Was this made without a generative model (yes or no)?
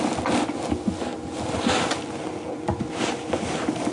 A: yes